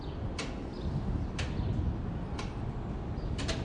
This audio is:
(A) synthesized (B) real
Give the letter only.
B